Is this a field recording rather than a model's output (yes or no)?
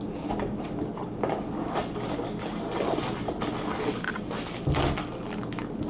yes